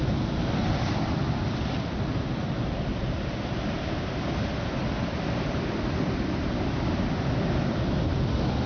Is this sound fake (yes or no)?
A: no